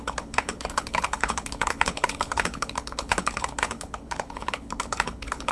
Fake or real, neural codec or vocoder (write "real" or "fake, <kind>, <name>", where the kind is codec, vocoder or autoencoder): fake, codec, HILCodec